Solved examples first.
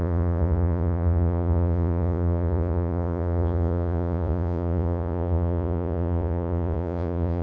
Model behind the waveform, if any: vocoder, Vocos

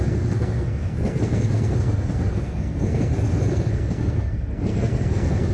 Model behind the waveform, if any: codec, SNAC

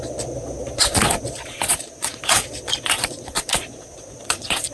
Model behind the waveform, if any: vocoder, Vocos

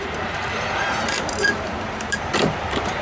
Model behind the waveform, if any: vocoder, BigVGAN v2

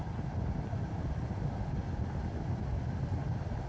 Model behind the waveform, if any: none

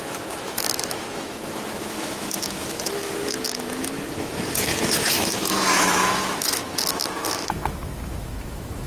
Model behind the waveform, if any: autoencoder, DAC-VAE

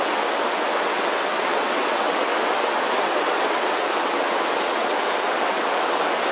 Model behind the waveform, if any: vocoder, WaveNeXt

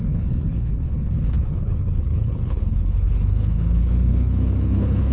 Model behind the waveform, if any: codec, HILCodec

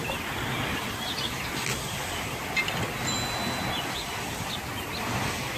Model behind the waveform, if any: none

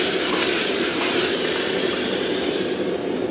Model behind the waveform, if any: vocoder, BigVGAN v2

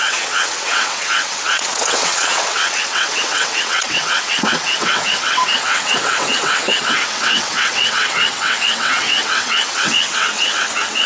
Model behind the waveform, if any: vocoder, WaveNeXt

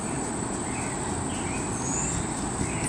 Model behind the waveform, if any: none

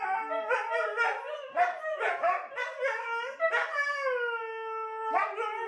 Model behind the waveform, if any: none